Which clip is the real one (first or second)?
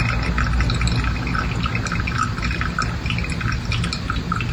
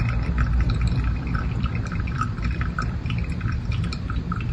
first